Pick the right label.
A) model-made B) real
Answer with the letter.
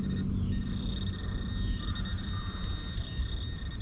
B